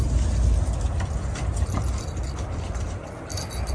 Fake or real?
real